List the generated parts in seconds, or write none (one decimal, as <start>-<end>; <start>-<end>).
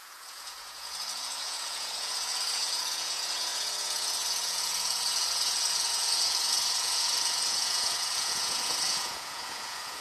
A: 0.0-10.0